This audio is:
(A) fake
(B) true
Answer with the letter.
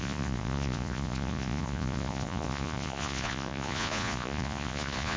A